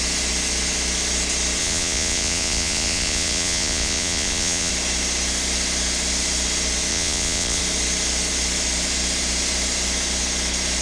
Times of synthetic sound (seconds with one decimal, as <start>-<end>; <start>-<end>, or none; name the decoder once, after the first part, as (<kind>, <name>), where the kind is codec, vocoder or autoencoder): 1.6-4.7 (vocoder, Vocos); 6.9-7.6